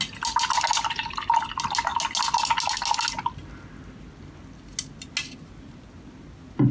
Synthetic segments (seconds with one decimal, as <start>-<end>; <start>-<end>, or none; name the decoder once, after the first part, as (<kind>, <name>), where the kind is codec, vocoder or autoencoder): none